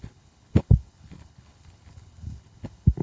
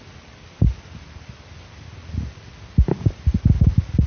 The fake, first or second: first